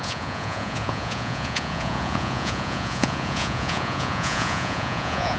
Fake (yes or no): yes